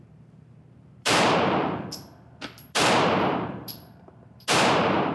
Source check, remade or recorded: remade